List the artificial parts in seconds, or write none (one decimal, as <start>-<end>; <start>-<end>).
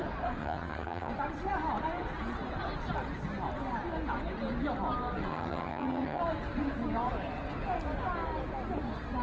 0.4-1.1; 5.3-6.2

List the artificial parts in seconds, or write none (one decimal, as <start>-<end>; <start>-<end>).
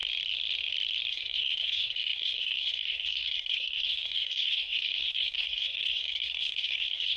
1.1-7.2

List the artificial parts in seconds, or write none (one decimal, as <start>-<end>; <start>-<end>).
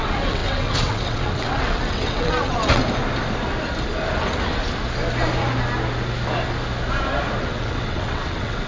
0.0-2.8; 7.4-8.7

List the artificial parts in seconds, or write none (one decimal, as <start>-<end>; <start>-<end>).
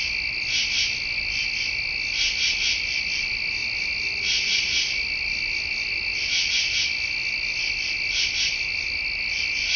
none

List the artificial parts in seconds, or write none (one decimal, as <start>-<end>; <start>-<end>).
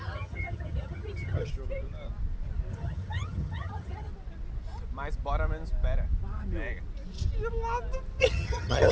0.0-1.5; 2.7-4.1; 8.2-8.9